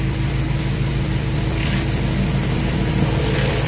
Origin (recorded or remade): recorded